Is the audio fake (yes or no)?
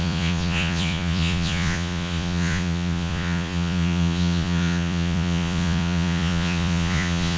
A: yes